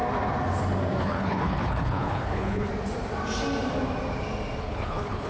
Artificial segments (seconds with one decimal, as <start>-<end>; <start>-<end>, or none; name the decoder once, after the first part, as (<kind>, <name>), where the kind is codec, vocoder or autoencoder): 1.0-2.7 (codec, HILCodec); 4.6-5.3